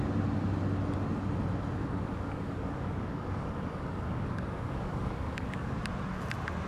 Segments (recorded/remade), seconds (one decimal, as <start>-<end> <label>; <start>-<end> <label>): 0.0-1.8 recorded; 1.8-5.8 remade; 5.8-6.7 recorded